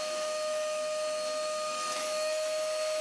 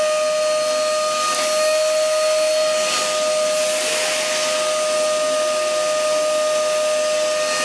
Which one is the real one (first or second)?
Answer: second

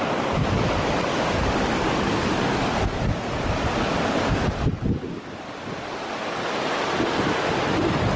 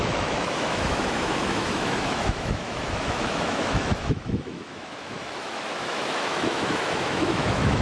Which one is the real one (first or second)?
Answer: first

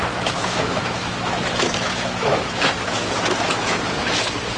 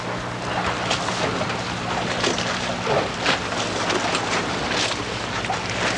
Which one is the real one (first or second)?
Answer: second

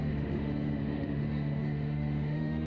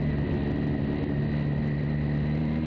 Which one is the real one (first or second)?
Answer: second